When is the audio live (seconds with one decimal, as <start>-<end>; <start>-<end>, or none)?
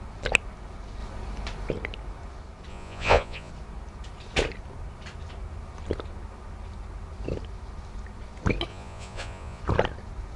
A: 0.0-2.7; 3.5-8.7; 9.6-10.4